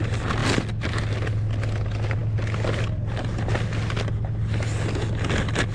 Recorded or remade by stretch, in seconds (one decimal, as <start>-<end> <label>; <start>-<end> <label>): 0.0-5.7 recorded